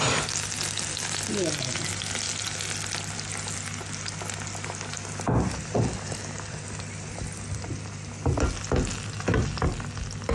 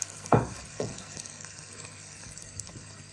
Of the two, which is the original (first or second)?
first